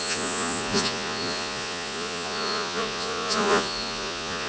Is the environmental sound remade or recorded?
remade